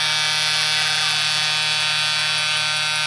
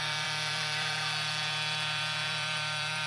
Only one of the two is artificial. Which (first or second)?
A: second